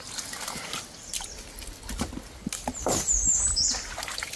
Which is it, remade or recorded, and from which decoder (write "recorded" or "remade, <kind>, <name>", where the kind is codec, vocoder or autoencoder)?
recorded